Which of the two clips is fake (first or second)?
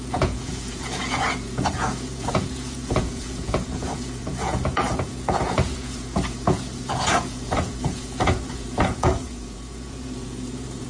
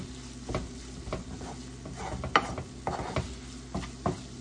first